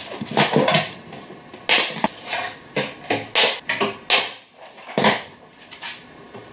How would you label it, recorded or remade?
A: recorded